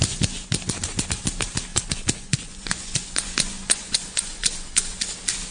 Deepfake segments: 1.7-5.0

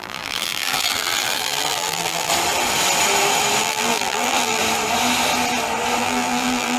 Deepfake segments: 0.0-2.3; 3.6-4.6; 6.0-6.8

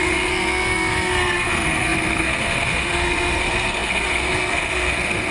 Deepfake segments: 0.0-5.3

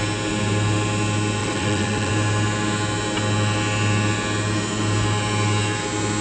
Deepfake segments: 1.4-2.1

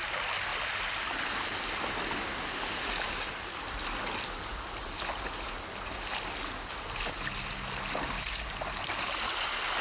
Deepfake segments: none

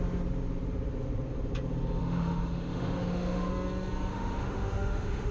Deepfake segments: 2.0-3.5; 4.1-5.3

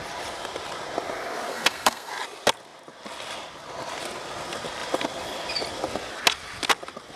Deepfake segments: 1.5-2.1